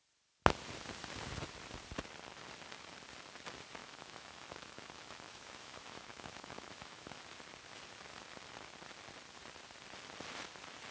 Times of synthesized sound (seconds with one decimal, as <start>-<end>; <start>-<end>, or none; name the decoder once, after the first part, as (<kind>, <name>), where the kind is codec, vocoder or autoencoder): 3.8-7.2 (autoencoder, DAC-VAE)